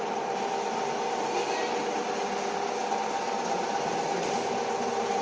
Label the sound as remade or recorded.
recorded